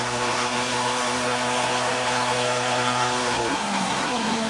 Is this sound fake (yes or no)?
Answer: yes